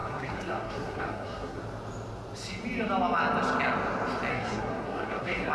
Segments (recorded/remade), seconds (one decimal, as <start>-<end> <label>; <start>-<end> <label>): 0.0-1.6 remade; 1.6-4.3 recorded; 4.3-5.5 remade